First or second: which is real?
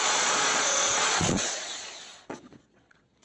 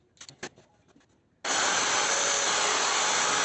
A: second